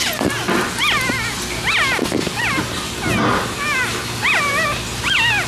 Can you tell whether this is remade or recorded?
recorded